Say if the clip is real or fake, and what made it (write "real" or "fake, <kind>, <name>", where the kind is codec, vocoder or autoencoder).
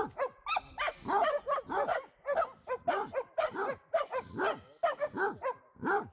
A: real